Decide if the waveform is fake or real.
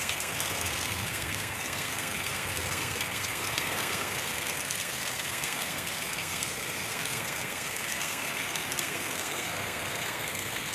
fake